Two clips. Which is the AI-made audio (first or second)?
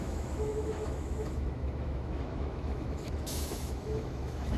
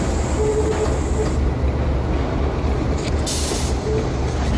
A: first